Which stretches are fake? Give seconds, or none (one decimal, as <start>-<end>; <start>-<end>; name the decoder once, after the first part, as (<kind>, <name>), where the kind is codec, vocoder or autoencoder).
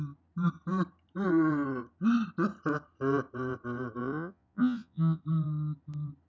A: 4.0-5.2 (vocoder, Vocos)